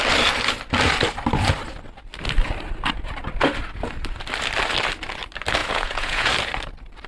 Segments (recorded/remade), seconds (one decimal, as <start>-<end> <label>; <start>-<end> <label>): 0.0-5.6 recorded; 5.6-6.3 remade; 6.3-7.1 recorded